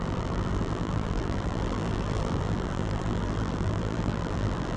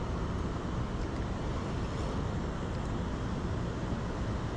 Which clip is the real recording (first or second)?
second